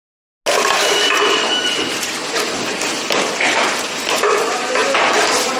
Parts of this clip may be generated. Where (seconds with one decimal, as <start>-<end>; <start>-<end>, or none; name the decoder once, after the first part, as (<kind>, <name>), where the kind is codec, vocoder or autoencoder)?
none